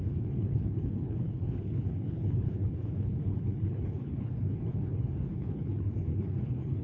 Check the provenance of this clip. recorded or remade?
remade